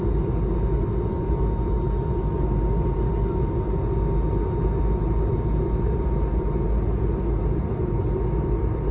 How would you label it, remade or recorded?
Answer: recorded